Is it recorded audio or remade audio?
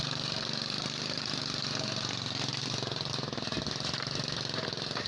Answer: recorded